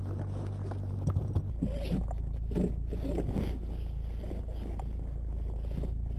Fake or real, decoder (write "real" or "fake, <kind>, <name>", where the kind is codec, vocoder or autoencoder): real